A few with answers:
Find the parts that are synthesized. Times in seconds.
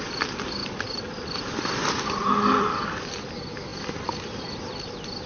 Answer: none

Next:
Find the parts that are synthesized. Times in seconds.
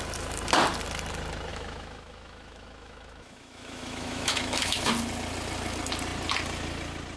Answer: 1.5-4.9 (autoencoder, DAC-VAE)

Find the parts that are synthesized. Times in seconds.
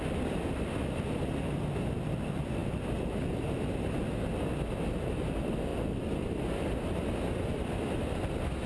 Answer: none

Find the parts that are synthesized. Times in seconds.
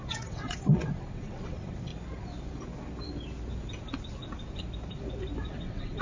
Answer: 0.0-1.9 (vocoder, WaveNeXt); 5.5-6.0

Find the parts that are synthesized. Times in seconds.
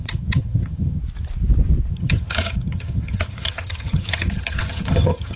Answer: 0.0-1.0 (vocoder, HiFi-GAN); 1.9-5.4